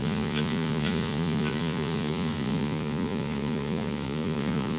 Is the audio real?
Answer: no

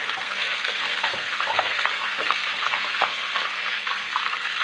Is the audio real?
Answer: no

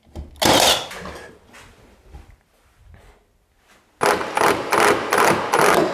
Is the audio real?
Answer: yes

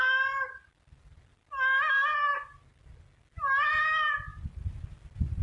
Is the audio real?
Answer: yes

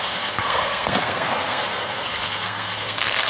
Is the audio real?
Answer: no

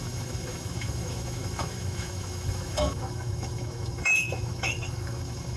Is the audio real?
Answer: no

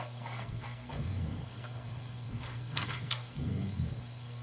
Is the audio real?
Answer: no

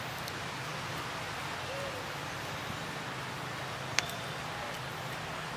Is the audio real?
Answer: yes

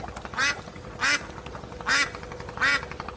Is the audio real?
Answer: yes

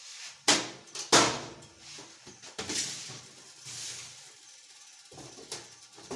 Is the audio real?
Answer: yes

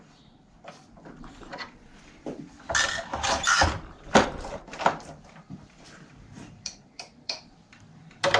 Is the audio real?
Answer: no